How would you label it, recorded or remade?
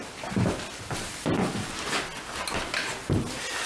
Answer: recorded